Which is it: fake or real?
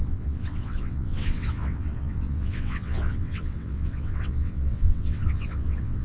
fake